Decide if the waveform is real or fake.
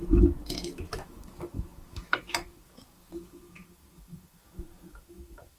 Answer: fake